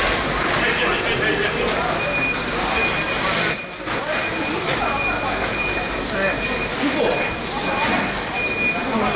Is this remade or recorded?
recorded